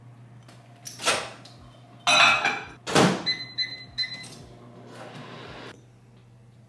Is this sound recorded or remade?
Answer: recorded